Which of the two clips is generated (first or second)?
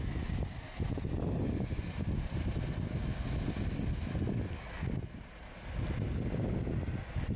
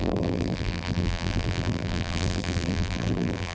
second